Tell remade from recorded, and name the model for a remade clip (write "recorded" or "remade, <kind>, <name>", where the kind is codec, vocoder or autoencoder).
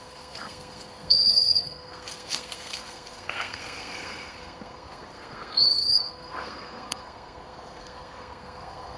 remade, codec, SNAC